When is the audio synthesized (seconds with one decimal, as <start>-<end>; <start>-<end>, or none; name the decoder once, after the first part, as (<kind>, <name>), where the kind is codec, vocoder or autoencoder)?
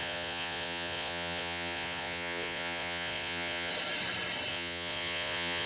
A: 0.0-3.7 (vocoder, Vocos); 4.5-5.7